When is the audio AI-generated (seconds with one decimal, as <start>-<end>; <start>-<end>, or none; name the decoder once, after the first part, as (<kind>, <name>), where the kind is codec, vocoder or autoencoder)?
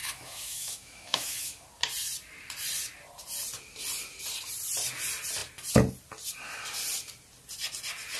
0.0-1.6 (autoencoder, DAC-VAE)